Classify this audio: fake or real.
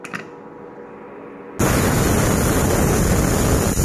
real